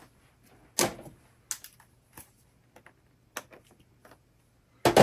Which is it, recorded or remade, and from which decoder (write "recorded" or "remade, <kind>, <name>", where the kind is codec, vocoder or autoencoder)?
recorded